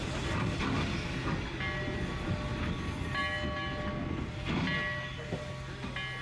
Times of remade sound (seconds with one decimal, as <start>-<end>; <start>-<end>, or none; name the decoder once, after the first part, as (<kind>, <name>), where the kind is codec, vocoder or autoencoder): none